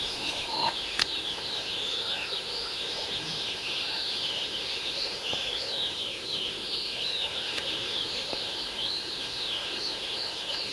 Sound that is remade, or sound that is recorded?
remade